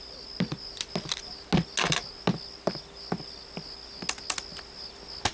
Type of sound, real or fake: real